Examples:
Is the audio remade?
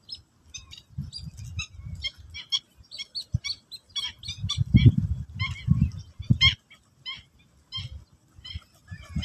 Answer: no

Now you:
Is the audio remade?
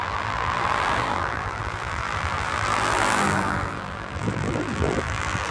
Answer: yes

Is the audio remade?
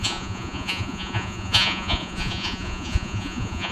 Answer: yes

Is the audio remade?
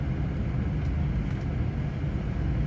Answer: no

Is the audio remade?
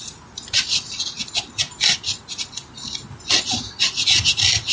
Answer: no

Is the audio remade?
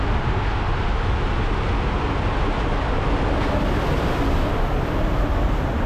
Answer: no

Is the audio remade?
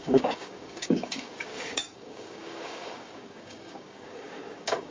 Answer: yes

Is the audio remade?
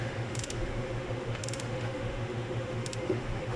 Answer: yes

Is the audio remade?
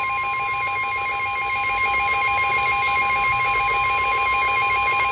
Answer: no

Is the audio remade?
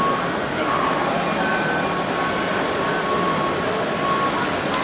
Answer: no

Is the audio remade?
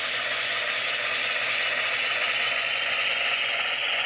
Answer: yes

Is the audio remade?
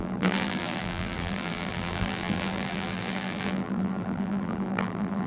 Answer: yes